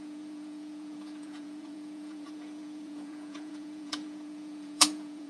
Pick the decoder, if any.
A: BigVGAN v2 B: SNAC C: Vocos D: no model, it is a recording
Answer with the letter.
C